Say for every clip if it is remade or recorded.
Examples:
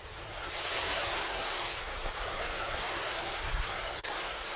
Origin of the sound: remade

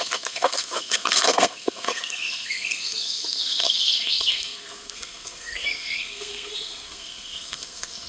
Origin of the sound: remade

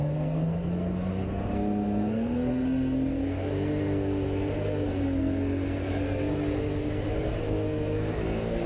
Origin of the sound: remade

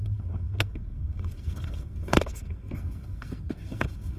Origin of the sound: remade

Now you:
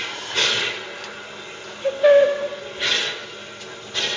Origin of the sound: recorded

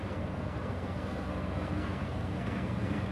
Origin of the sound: remade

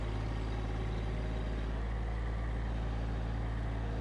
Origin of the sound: recorded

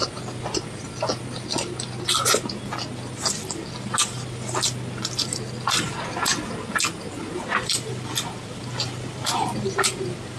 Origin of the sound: recorded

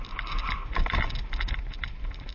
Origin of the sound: recorded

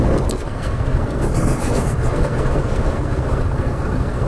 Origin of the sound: remade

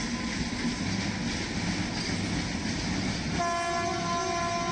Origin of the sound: recorded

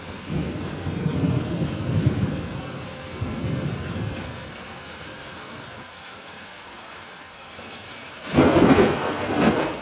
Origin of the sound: remade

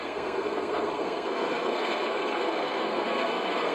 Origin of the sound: remade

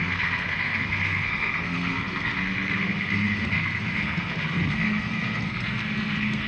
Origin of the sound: remade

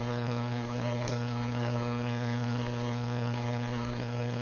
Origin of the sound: remade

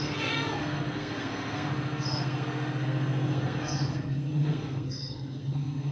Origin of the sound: remade